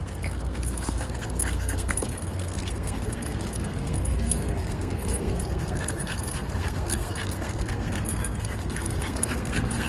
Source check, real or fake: fake